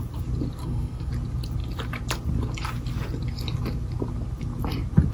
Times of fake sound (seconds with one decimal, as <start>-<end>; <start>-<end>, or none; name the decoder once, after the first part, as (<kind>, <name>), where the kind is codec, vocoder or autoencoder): 0.6-1.1 (codec, SNAC)